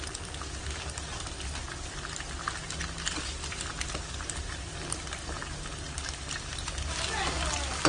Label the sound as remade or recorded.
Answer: recorded